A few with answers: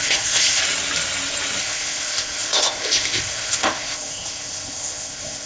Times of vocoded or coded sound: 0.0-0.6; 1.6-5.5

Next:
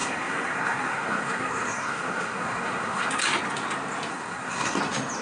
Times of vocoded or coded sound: 0.0-3.1; 4.1-4.8

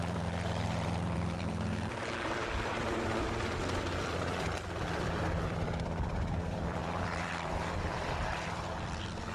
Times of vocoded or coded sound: 0.0-9.3

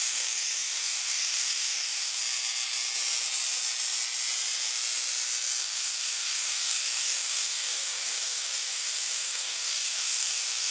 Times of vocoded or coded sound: 0.0-2.2; 5.6-10.7

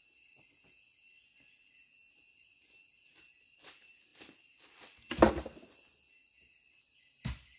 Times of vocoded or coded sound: none